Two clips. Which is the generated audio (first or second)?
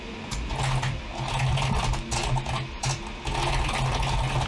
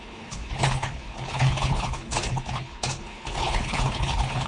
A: second